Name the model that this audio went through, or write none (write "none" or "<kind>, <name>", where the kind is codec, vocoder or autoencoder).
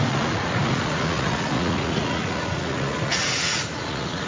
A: vocoder, Vocos